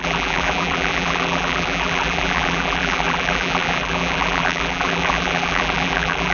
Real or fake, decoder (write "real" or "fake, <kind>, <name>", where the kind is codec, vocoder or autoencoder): fake, vocoder, BigVGAN v2